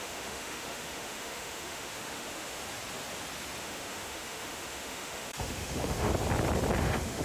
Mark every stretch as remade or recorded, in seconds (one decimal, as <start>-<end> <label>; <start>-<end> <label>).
0.0-2.6 remade; 2.6-3.6 recorded; 3.6-6.1 remade; 6.1-6.8 recorded; 6.8-7.2 remade